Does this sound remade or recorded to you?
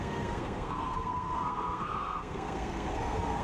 remade